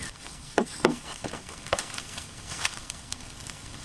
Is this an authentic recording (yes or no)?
no